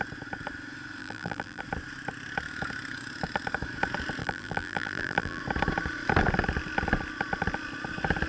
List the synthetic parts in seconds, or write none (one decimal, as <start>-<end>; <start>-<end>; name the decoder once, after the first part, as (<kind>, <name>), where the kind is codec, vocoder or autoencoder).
1.0-1.6 (vocoder, BigVGAN v2); 4.2-5.4